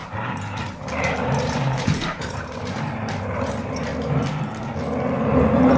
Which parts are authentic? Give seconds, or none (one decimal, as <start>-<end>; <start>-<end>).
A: 3.9-5.8

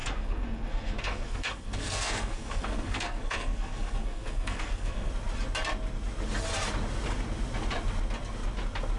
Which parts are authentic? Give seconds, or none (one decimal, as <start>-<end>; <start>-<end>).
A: 5.1-9.0